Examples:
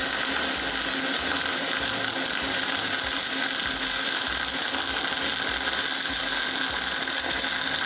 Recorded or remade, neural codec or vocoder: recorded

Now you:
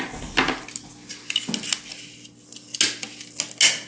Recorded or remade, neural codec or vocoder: recorded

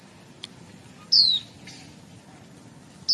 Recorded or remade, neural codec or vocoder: recorded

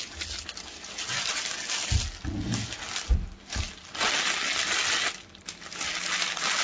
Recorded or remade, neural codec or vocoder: recorded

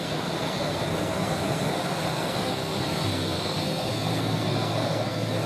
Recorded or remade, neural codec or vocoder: remade, codec, SNAC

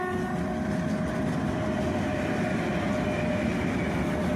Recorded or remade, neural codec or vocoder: recorded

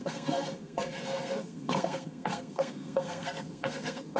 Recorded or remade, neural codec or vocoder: remade, codec, SNAC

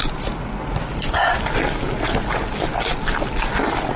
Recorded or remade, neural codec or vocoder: recorded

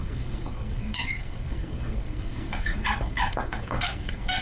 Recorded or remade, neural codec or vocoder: remade, codec, SNAC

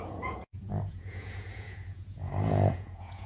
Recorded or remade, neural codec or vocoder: remade, vocoder, Vocos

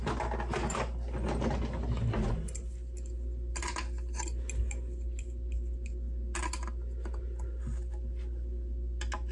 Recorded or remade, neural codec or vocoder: recorded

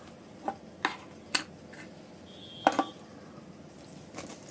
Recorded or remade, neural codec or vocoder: recorded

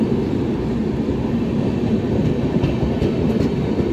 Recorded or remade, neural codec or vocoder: recorded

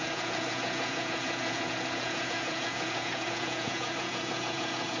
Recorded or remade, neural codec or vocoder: remade, vocoder, Vocos